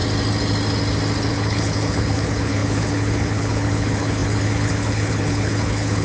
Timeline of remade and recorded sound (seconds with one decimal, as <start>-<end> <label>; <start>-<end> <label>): 0.0-1.3 recorded; 1.3-6.0 remade